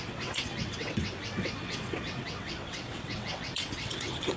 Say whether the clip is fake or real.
fake